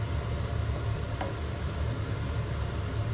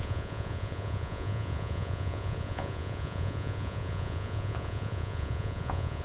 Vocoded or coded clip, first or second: second